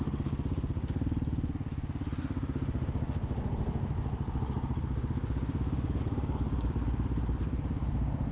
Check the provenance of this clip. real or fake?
real